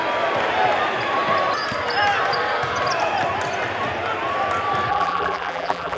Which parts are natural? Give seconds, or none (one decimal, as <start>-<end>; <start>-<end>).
0.0-4.9